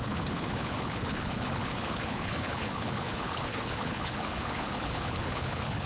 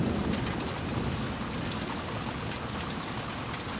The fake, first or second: first